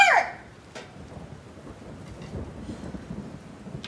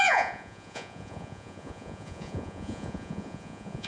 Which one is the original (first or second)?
first